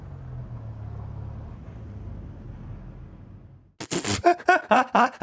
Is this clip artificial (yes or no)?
no